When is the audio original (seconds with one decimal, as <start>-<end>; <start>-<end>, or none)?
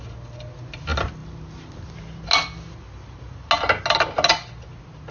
0.0-5.1